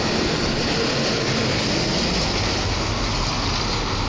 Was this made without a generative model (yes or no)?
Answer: yes